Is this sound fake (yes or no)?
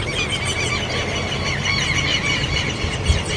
no